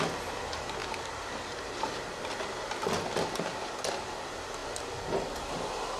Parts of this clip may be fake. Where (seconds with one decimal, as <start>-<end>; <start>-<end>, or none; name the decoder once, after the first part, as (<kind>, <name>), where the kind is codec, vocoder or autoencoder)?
0.8-2.2 (vocoder, BigVGAN v2)